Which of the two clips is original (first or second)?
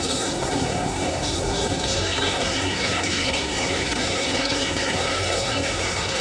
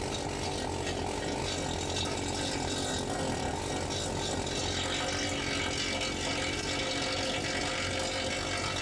second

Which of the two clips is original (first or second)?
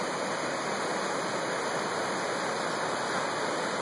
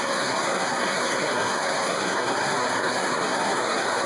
first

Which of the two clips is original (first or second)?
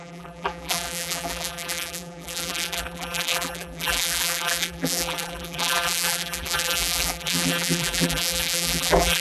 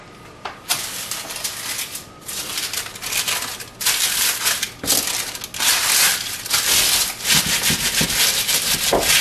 second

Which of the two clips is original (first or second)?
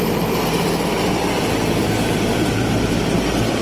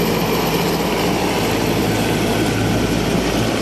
second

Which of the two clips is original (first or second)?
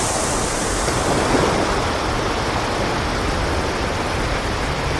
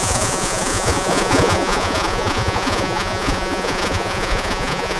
first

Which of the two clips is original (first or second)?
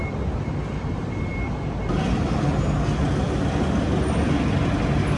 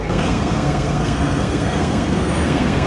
first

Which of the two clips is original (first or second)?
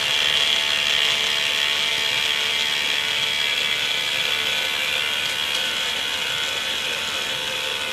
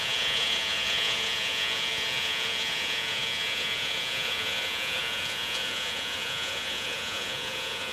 first